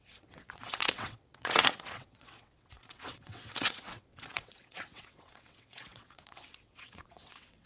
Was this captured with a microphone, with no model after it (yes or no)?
no